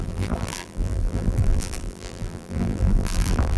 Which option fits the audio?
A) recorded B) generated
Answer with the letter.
B